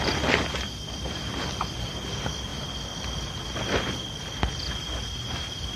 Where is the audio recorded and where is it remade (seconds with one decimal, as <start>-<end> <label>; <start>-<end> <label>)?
0.0-5.8 recorded